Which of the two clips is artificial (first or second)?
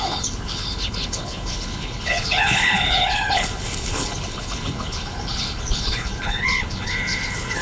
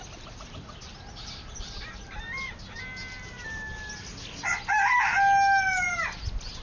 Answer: first